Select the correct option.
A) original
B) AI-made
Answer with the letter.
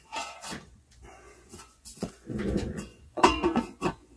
B